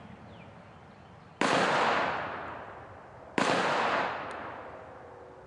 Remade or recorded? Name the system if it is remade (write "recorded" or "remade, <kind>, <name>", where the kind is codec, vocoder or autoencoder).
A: recorded